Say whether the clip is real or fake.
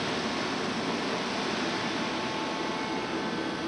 real